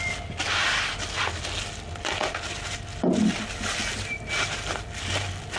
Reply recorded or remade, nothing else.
recorded